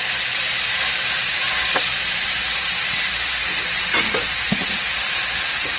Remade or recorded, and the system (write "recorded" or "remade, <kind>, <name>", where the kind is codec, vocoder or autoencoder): remade, vocoder, BigVGAN v2